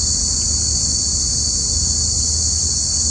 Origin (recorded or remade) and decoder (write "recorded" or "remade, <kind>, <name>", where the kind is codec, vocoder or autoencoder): recorded